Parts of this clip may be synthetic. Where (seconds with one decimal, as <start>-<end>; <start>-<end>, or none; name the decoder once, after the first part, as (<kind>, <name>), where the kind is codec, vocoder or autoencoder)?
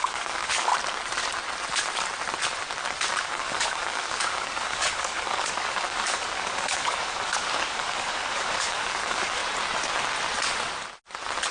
0.0-0.7 (codec, DAC); 3.2-9.4